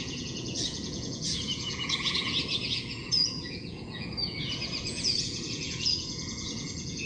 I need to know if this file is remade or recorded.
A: remade